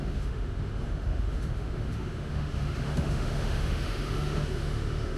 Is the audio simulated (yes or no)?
yes